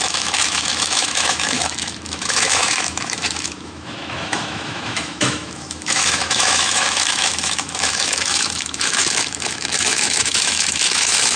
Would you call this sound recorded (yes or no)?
no